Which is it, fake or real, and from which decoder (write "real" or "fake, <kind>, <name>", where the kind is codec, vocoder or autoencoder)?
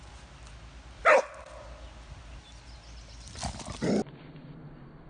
real